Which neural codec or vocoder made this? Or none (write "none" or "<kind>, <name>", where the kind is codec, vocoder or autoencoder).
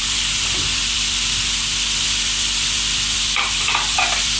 vocoder, BigVGAN v2